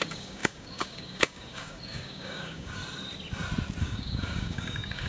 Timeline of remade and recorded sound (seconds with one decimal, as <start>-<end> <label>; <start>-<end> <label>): 0.0-2.8 remade; 2.8-3.8 recorded; 3.8-5.1 remade